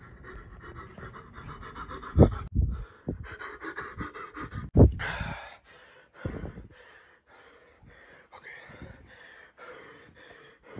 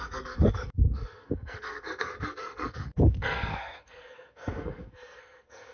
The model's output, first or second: second